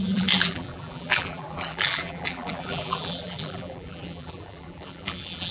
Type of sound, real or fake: fake